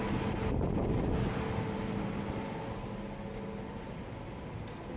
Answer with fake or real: real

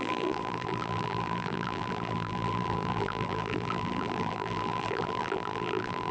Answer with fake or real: fake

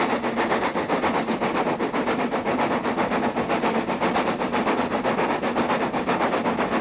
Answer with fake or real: real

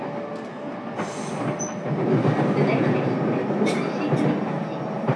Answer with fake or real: real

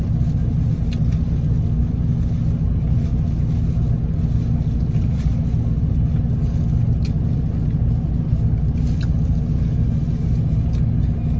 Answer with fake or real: real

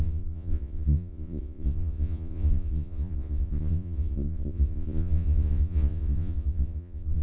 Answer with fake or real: fake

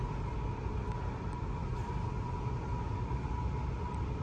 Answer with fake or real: real